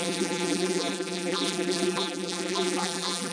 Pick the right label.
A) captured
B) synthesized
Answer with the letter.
B